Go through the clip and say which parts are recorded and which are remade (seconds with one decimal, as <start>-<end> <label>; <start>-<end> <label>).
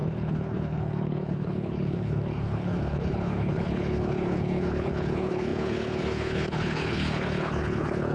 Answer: 0.0-8.1 remade